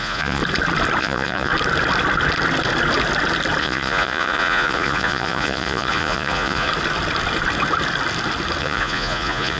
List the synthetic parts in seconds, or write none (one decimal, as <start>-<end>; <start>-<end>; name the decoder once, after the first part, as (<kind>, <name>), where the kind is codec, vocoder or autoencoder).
0.0-0.4 (vocoder, Vocos); 1.0-1.5; 3.6-6.7; 8.6-9.6